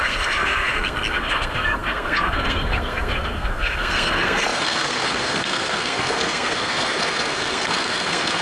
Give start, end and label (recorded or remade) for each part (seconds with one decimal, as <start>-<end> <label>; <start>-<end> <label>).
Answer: 0.0-8.4 remade